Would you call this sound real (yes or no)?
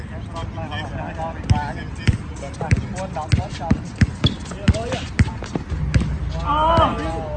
yes